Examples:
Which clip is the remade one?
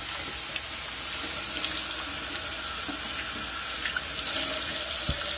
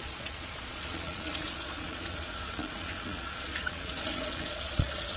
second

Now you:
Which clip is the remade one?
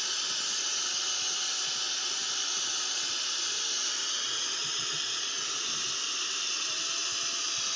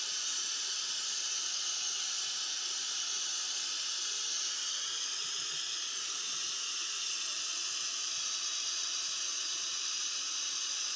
second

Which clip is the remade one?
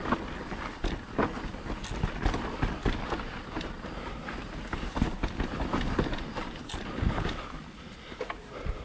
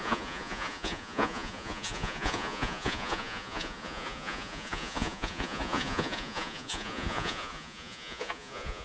second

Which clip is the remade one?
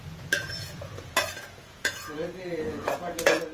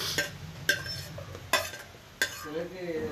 first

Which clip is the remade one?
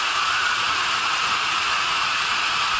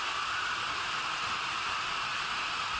first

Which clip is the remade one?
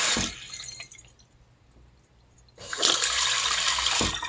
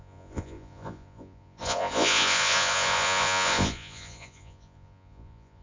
second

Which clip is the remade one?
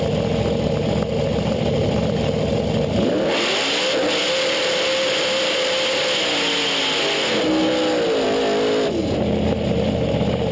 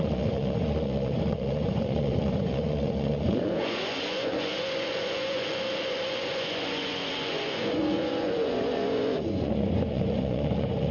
second